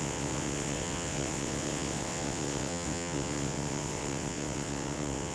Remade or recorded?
remade